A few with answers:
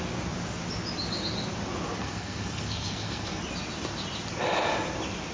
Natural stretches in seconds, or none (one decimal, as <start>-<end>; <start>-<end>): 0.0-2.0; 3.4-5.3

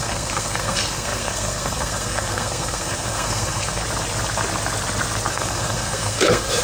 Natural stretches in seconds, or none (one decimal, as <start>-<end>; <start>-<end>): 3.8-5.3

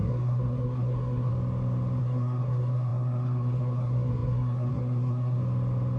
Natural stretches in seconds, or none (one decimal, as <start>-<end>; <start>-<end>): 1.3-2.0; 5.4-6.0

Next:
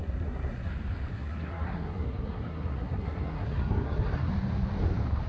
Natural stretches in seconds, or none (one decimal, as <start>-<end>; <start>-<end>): 0.7-1.1; 4.3-5.3

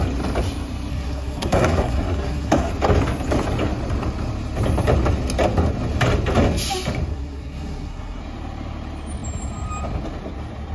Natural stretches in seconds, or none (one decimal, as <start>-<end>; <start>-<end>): 0.0-0.9; 2.7-7.1; 8.2-10.7

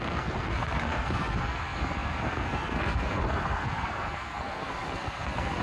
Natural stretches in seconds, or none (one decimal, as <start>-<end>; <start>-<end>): none

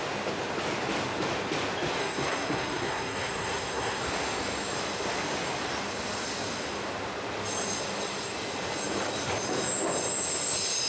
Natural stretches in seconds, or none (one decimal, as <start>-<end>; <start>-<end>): 0.0-2.0; 4.0-10.9